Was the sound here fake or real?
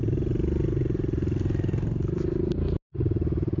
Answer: real